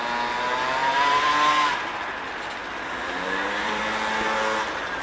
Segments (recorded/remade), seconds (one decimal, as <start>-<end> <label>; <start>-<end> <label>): 0.0-0.8 recorded; 0.8-1.8 remade; 1.8-2.6 recorded; 2.6-3.8 remade; 3.8-5.0 recorded